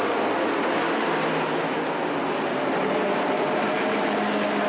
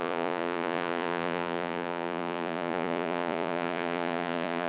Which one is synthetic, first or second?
second